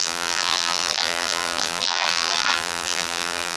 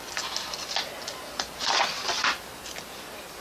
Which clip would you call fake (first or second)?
first